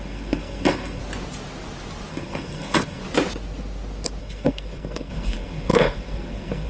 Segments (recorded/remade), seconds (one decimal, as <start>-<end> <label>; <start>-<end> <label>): 0.0-1.0 remade; 1.0-2.1 recorded; 2.1-3.0 remade; 3.0-4.2 recorded; 4.2-6.7 remade